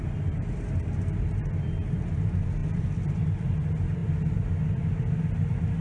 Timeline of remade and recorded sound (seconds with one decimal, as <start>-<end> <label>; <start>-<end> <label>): 0.0-5.8 recorded